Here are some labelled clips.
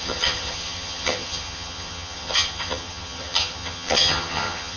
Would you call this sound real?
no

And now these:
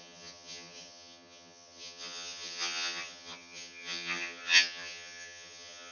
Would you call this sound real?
no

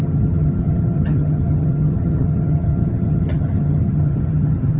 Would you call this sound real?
no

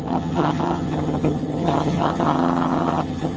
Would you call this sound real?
no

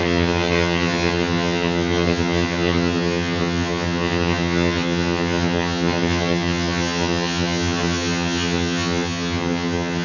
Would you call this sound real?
no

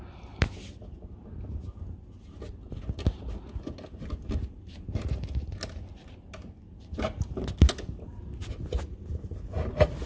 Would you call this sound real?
yes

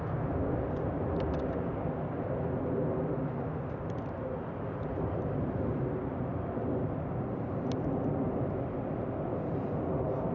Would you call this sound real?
yes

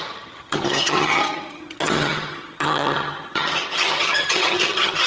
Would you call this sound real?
no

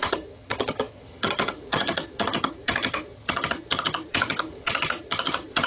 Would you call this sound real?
no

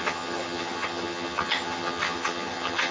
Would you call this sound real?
no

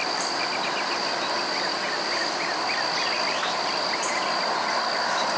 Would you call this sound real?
yes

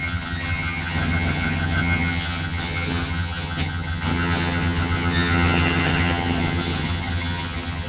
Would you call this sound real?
no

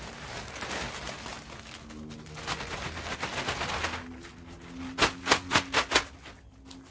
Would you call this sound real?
yes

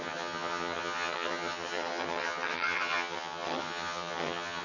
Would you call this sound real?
no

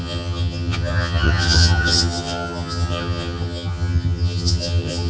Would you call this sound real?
no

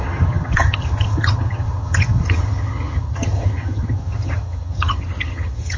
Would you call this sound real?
no